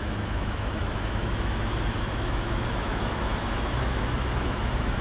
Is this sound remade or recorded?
remade